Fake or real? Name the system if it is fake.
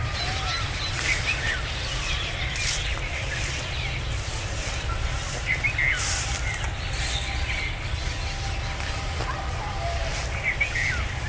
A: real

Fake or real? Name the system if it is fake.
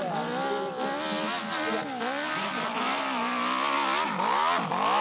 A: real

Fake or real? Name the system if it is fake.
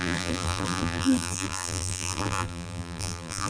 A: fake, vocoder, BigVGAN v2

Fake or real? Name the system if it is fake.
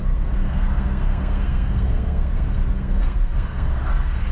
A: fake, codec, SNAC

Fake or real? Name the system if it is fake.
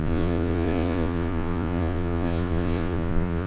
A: fake, vocoder, Vocos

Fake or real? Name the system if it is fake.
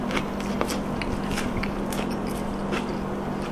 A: real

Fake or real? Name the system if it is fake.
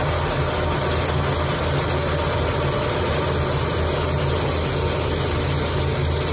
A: real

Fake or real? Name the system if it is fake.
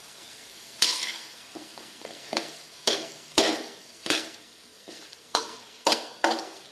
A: fake, codec, SNAC